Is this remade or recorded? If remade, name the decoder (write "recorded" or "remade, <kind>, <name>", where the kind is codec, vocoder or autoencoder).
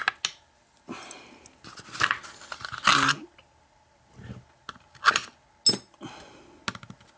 recorded